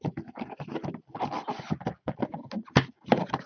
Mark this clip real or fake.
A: real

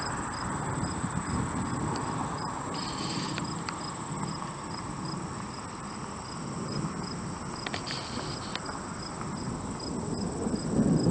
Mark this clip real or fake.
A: real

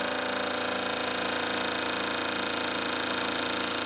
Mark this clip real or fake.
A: real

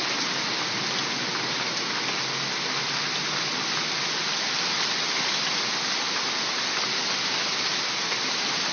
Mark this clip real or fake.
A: real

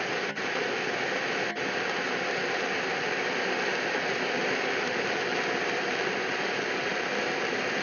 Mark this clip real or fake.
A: real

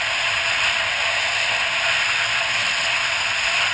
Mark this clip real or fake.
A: real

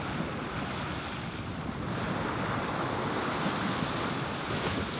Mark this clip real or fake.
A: real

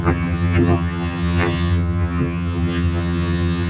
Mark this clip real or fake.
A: fake